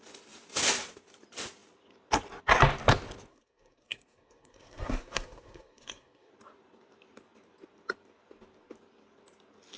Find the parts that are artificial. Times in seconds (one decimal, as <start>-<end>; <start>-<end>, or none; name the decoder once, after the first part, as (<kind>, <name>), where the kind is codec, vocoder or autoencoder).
3.3-6.3 (codec, SNAC)